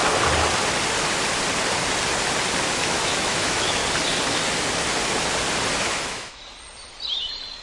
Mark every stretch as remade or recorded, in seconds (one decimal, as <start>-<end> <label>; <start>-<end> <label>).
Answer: 0.0-2.7 recorded; 2.7-3.8 remade; 3.8-5.8 recorded; 5.8-6.4 remade; 6.4-7.6 recorded

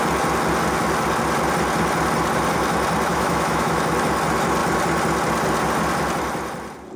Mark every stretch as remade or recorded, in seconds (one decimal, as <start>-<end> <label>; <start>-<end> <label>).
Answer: 0.0-3.1 recorded; 3.1-3.8 remade; 3.8-7.0 recorded

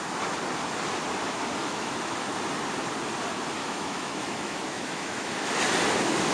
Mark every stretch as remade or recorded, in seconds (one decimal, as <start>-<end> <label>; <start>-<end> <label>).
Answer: 0.0-1.6 recorded; 1.6-2.3 remade; 2.3-3.6 recorded; 3.6-5.6 remade; 5.6-6.3 recorded

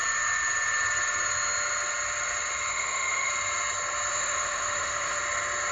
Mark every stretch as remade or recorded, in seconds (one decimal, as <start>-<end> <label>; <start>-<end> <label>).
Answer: 0.0-2.7 recorded; 2.7-3.3 remade; 3.3-4.1 recorded; 4.1-5.2 remade; 5.2-5.7 recorded

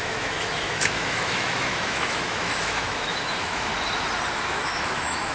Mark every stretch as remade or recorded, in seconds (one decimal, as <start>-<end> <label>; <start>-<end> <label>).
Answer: 0.0-3.7 remade; 3.7-4.3 recorded; 4.3-5.3 remade

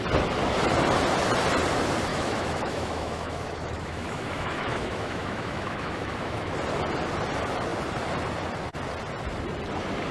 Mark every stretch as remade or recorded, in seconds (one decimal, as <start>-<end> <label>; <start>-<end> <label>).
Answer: 0.0-2.1 recorded; 2.1-6.5 remade; 6.5-10.1 recorded

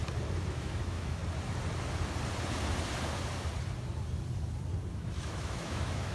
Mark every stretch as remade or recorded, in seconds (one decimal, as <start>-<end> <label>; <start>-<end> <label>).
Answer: 0.0-0.5 recorded; 0.5-1.2 remade; 1.2-4.9 recorded; 4.9-6.1 remade

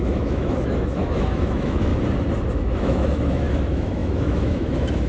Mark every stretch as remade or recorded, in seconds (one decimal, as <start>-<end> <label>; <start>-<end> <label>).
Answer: 0.0-1.9 remade; 1.9-2.5 recorded; 2.5-5.1 remade